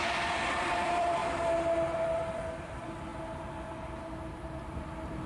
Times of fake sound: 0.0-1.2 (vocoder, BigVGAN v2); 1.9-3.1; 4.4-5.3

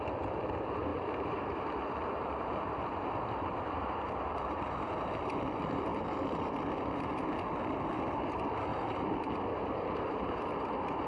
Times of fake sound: 0.9-5.1 (vocoder, BigVGAN v2); 8.7-10.5

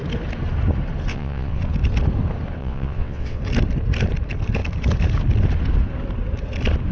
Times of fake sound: 1.1-1.6 (vocoder, WaveNeXt); 2.6-3.4